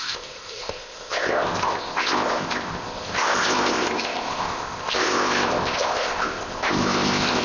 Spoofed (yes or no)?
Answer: yes